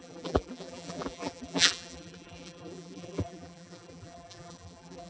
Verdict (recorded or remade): remade